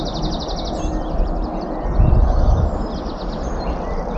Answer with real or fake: real